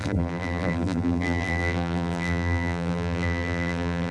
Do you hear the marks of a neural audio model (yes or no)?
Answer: yes